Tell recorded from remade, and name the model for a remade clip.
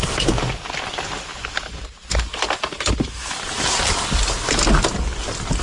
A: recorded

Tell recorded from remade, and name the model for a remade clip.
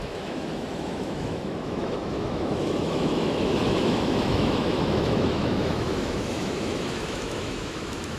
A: remade, autoencoder, DAC-VAE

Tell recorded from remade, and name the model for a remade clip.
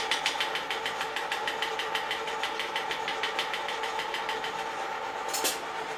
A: recorded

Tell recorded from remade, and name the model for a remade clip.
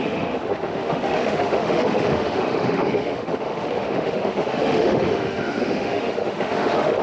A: remade, autoencoder, DAC-VAE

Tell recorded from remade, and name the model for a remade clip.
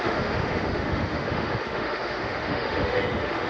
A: remade, autoencoder, DAC-VAE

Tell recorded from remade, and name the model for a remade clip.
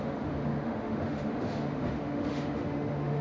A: remade, autoencoder, DAC-VAE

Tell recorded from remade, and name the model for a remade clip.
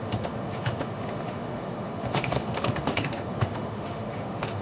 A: remade, autoencoder, DAC-VAE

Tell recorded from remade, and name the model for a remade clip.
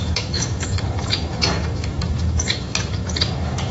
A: remade, autoencoder, DAC-VAE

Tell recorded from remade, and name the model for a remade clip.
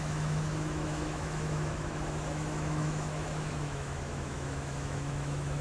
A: remade, autoencoder, DAC-VAE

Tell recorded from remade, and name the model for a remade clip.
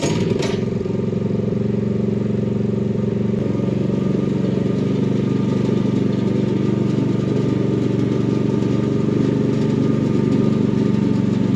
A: recorded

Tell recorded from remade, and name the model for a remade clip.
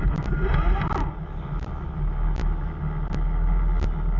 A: recorded